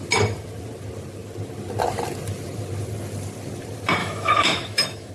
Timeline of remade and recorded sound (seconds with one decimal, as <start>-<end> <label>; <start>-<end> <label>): 0.0-4.0 recorded; 4.0-5.1 remade

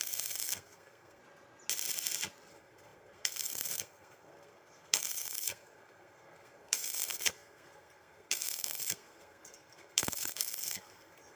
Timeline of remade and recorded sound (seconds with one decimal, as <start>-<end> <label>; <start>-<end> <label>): 0.0-1.2 remade; 1.2-2.5 recorded; 2.5-11.4 remade

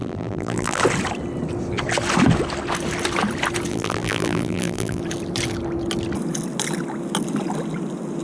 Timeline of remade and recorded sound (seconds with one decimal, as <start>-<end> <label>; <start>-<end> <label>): 0.0-0.8 remade; 0.8-3.7 recorded; 3.7-5.0 remade; 5.0-8.2 recorded

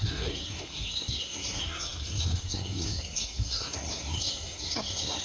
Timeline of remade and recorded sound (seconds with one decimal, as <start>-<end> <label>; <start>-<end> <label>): 0.0-5.2 remade

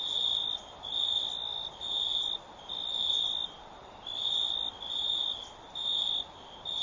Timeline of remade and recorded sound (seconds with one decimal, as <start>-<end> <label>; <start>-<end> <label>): 0.0-6.8 recorded

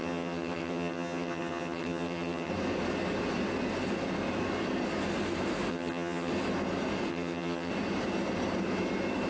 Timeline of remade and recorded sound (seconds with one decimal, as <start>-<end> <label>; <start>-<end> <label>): 0.0-2.5 remade; 2.5-5.7 recorded; 5.7-6.3 remade; 6.3-7.1 recorded; 7.1-7.7 remade; 7.7-9.3 recorded

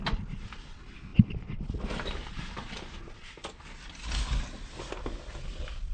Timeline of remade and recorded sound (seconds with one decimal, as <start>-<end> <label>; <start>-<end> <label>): 0.0-5.9 recorded